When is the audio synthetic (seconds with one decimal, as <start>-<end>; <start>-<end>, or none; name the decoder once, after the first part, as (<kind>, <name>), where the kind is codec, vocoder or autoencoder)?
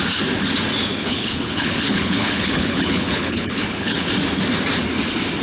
0.9-4.1 (codec, HILCodec)